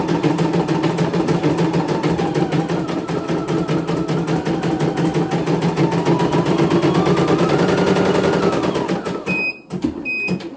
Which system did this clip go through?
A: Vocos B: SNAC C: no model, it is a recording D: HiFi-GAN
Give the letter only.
C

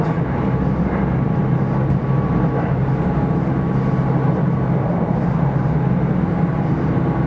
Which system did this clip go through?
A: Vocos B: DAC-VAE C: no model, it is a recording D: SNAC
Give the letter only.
C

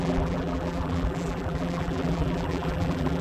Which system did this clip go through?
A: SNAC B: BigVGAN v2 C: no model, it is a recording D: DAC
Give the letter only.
B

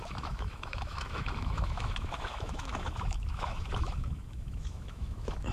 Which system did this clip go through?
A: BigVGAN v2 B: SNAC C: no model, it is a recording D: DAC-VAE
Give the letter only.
D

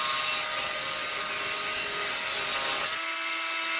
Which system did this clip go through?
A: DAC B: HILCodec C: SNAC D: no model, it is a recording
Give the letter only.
D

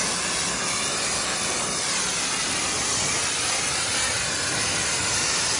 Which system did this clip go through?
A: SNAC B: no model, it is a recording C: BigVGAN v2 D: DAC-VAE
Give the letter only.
B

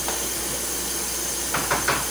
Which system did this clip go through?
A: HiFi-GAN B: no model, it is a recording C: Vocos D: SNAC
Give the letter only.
B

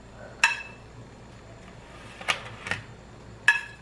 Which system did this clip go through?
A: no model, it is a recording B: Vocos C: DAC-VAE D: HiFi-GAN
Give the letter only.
A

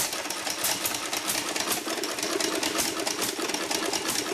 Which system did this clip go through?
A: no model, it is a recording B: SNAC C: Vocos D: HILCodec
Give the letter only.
A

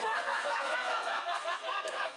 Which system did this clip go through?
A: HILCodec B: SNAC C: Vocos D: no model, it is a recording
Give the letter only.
B